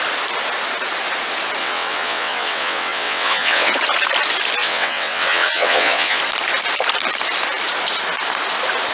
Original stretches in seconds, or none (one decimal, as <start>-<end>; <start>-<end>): 0.0-1.6; 3.7-4.6; 6.2-8.9